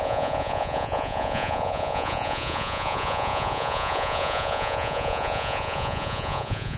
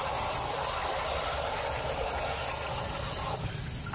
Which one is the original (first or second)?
second